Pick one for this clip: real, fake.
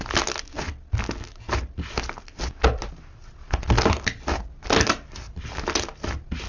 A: real